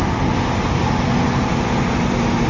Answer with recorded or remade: recorded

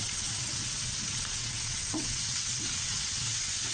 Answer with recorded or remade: remade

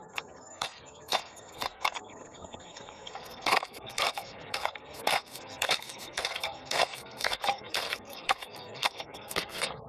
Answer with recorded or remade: remade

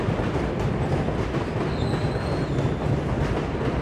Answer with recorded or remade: recorded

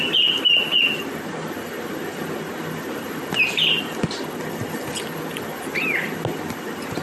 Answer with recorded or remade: recorded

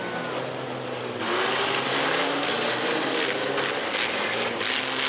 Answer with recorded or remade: recorded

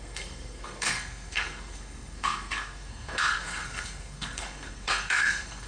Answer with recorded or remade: remade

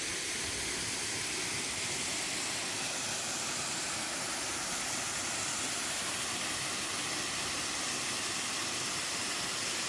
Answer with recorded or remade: recorded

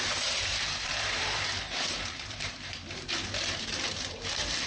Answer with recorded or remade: remade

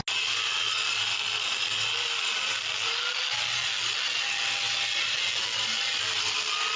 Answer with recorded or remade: recorded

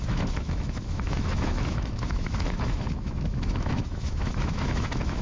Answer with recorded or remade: remade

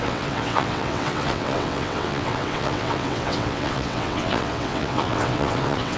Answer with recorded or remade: remade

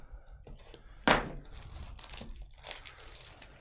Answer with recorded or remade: recorded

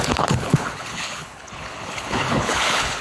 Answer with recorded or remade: remade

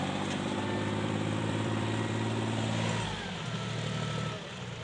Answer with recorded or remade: remade